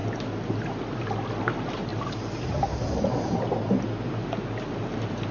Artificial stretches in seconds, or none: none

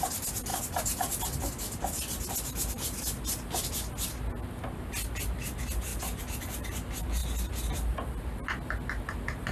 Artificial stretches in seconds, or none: none

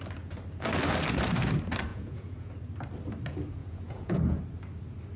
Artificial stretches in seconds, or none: 1.9-2.5 (vocoder, Vocos); 3.6-4.4